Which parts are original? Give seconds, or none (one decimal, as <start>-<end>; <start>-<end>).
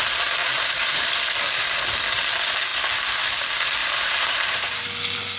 0.0-0.4; 1.1-3.8; 4.9-5.4